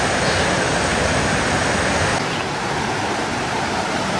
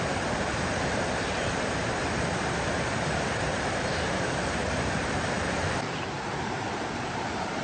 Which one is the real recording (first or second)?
first